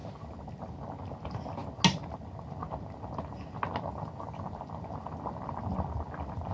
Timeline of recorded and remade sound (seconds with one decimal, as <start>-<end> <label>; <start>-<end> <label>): 0.0-6.5 recorded